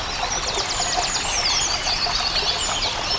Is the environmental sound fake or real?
real